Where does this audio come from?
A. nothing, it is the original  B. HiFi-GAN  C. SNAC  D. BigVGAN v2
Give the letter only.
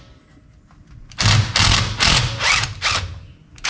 A